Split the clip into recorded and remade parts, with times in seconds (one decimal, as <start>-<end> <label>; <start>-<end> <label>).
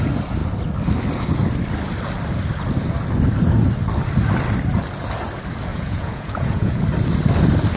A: 0.0-5.7 recorded; 5.7-6.8 remade; 6.8-7.8 recorded